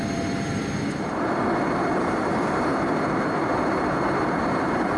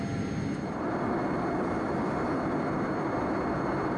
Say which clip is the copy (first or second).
first